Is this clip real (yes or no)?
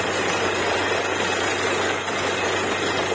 yes